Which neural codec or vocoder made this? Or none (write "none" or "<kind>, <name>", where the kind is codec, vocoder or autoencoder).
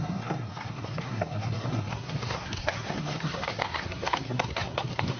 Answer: codec, SNAC